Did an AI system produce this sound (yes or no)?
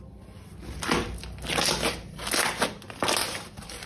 no